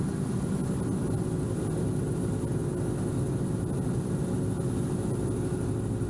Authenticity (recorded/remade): recorded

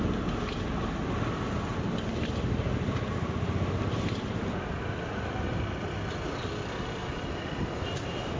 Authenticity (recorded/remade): recorded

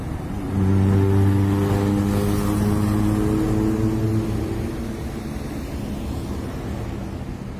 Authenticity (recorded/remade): recorded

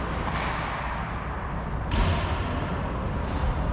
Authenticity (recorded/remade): recorded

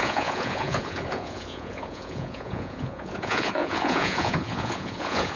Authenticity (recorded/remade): remade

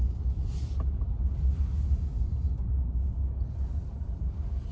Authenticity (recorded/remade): recorded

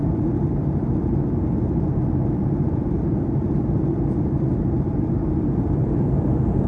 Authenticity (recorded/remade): remade